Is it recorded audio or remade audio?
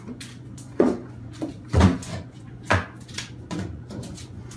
remade